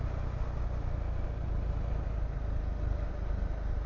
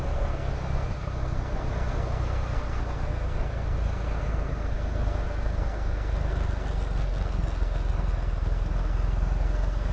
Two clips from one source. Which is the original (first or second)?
first